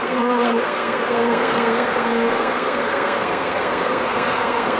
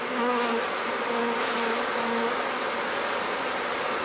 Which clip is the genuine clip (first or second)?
second